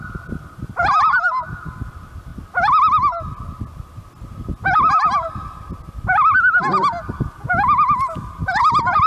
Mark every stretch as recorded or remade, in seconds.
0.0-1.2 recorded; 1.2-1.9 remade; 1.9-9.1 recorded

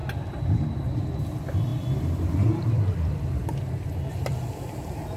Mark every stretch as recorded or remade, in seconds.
0.0-1.7 recorded; 1.7-4.8 remade; 4.8-5.2 recorded

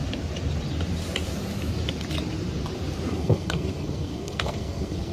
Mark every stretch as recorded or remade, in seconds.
0.0-3.1 recorded; 3.1-5.1 remade

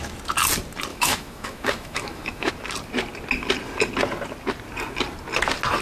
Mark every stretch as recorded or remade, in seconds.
0.0-0.9 recorded; 0.9-2.5 remade; 2.5-5.8 recorded

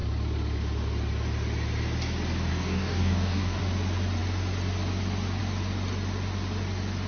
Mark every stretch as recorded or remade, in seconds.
0.0-2.5 recorded; 2.5-3.6 remade; 3.6-7.1 recorded

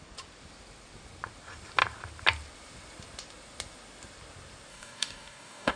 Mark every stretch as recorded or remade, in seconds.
0.0-4.7 recorded; 4.7-5.8 remade

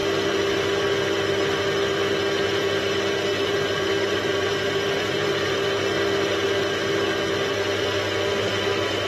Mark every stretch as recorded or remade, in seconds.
0.0-3.3 recorded; 3.3-5.8 remade; 5.8-9.1 recorded